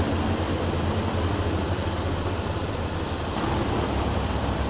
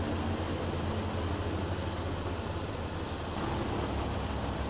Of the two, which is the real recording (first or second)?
second